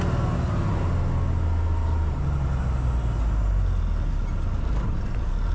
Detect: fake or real real